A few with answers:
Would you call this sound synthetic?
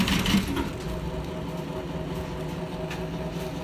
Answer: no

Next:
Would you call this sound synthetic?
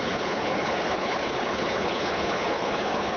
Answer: yes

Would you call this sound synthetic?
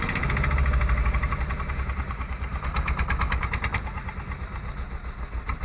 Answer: no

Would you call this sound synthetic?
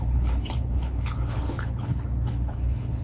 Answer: yes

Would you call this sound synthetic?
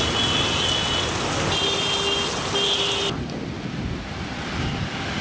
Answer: no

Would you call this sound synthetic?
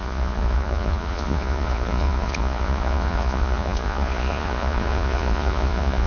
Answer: yes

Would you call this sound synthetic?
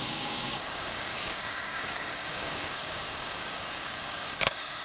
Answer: yes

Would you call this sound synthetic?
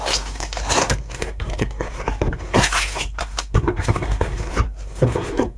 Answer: yes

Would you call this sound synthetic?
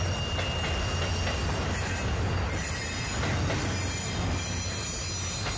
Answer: no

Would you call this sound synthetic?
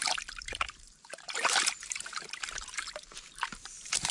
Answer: yes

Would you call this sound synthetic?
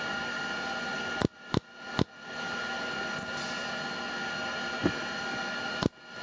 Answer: no